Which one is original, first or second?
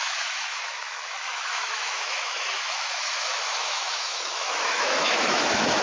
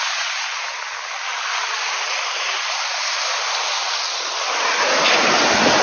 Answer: second